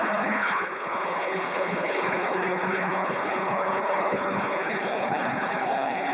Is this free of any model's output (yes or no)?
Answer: no